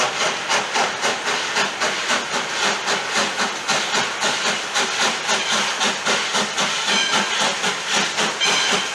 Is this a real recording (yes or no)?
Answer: yes